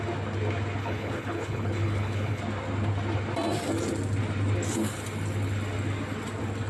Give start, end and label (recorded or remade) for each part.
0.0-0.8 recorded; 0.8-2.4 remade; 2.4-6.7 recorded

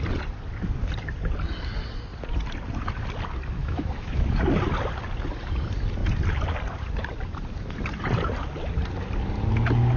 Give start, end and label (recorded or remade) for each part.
0.0-3.6 recorded; 3.6-4.4 remade; 4.4-10.0 recorded

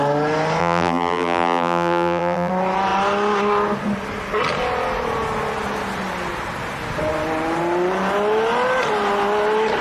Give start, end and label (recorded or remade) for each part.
0.0-0.6 recorded; 0.6-2.5 remade; 2.5-9.8 recorded

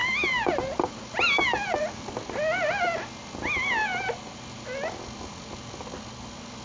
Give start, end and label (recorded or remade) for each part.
0.0-6.6 recorded

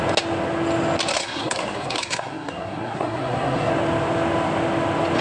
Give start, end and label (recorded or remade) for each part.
0.0-1.1 recorded; 1.1-3.7 remade; 3.7-5.2 recorded

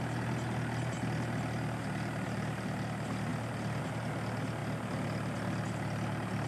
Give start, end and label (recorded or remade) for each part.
0.0-6.5 recorded